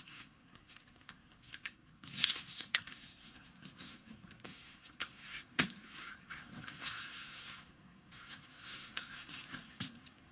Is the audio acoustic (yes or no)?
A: no